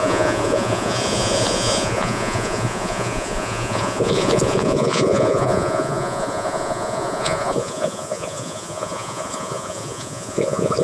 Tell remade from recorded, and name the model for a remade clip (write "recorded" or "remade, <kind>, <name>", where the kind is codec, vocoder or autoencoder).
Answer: remade, vocoder, Vocos